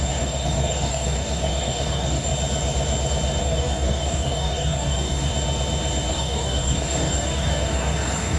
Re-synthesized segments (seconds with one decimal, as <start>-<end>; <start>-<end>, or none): 0.0-2.3; 3.4-5.3; 6.1-8.4